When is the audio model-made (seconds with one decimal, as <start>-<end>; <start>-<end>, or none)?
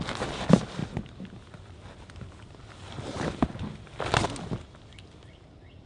none